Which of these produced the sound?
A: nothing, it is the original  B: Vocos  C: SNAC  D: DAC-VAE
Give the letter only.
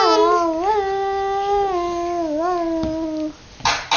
A